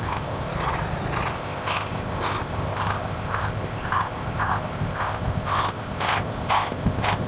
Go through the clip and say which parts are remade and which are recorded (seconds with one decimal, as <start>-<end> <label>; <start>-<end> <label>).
0.0-0.5 remade; 0.5-1.3 recorded; 1.3-7.3 remade